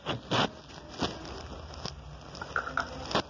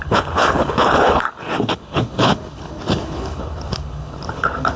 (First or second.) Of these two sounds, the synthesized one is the second